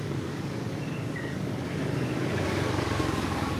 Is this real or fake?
fake